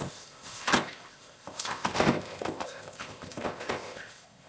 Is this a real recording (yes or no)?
no